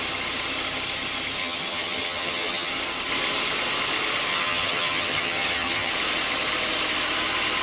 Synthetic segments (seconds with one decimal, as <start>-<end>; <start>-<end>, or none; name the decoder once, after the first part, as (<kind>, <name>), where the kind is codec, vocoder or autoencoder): 1.4-2.7 (vocoder, HiFi-GAN); 4.3-5.9